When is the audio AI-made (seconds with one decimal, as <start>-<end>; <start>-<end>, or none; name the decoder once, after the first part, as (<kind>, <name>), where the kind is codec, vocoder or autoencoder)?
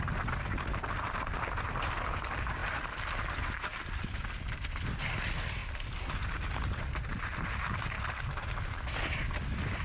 none